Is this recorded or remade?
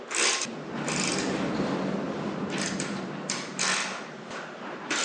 recorded